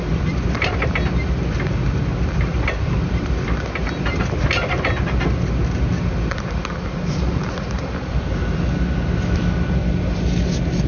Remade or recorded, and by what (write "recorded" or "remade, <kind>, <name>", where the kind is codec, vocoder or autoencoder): recorded